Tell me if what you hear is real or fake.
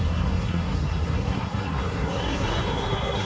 fake